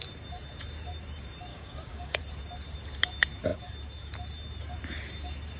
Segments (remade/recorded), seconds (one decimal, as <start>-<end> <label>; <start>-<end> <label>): 0.0-1.5 recorded; 1.5-2.2 remade; 2.2-5.6 recorded